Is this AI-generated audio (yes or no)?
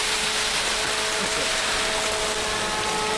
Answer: no